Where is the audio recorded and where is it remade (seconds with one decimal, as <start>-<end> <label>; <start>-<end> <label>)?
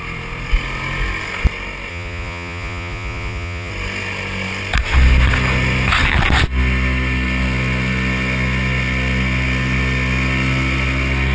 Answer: 0.0-1.9 recorded; 1.9-3.7 remade; 3.7-11.3 recorded